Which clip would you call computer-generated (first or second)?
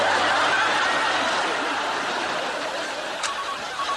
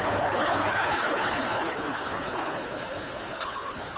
second